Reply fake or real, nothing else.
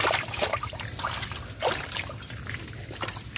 real